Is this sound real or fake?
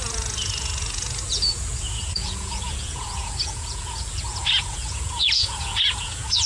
fake